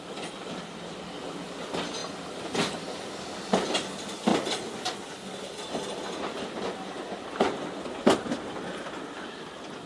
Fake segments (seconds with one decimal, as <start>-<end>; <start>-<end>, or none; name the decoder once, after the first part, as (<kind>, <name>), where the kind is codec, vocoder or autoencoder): none